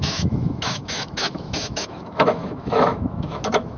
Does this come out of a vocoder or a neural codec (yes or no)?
yes